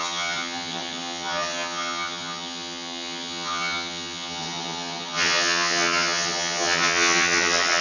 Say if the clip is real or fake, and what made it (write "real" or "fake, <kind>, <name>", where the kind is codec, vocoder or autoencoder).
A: fake, vocoder, HiFi-GAN